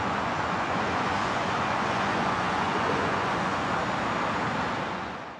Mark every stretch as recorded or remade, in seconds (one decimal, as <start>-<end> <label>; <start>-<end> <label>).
0.0-3.8 remade; 3.8-4.9 recorded; 4.9-5.4 remade